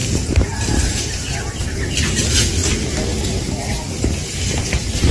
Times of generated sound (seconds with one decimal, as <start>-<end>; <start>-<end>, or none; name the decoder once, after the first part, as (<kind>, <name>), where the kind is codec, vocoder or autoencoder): 0.0-1.5 (vocoder, BigVGAN v2)